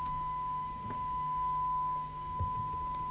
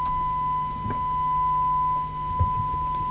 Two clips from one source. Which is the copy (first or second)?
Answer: first